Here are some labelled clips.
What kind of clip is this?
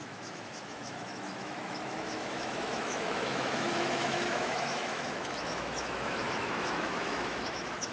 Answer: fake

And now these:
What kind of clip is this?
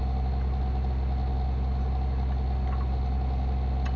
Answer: real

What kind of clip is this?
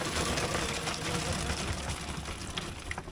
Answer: real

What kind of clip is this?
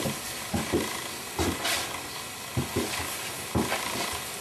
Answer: real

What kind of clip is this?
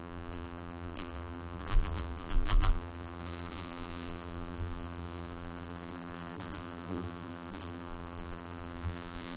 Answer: fake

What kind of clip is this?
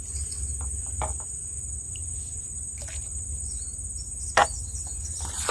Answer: real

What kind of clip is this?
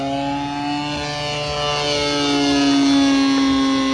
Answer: real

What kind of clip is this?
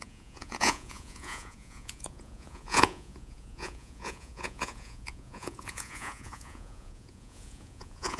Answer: fake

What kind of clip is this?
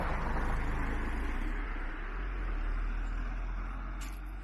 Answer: real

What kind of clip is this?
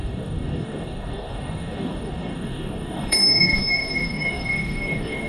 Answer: fake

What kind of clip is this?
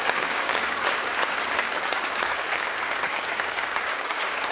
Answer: fake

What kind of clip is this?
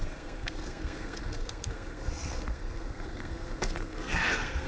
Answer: fake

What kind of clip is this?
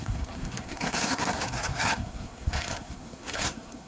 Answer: fake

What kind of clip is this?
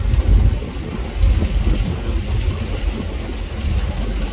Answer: real